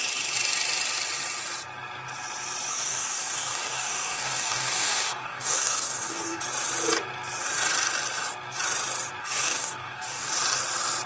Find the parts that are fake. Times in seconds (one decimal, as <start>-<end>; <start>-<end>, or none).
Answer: 2.7-6.4; 9.2-10.3